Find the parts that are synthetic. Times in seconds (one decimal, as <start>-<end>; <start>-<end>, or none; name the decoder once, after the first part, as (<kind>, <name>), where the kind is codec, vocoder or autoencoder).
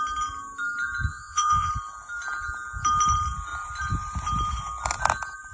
1.1-1.7 (vocoder, Vocos)